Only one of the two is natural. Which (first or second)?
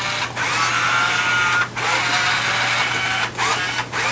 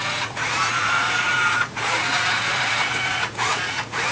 first